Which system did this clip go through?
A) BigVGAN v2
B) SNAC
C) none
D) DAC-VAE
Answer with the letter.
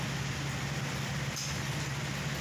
C